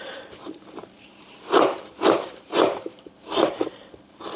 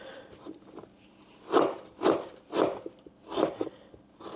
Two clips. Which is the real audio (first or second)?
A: second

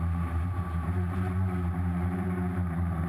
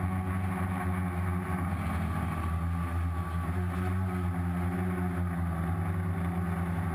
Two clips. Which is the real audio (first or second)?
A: second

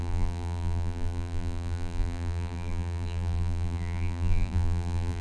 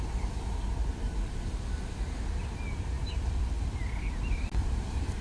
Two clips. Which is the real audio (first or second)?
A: second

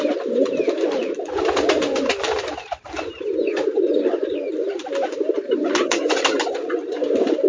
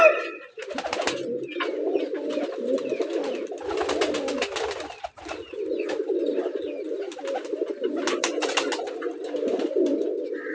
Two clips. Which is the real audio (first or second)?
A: second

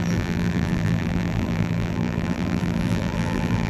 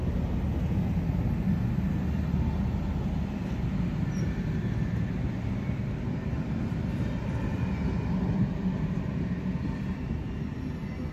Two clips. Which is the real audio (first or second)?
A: second